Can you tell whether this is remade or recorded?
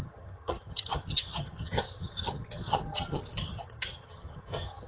remade